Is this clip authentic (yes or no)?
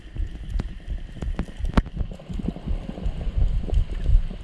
yes